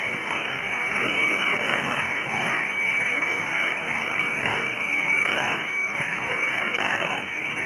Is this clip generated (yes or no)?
yes